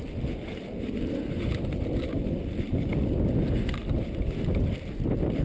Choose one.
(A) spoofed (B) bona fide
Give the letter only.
B